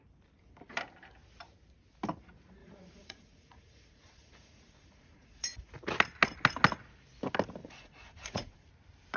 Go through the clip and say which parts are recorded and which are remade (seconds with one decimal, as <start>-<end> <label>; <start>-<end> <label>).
0.0-2.6 recorded; 2.6-5.7 remade; 5.7-7.6 recorded; 7.6-8.7 remade; 8.7-9.2 recorded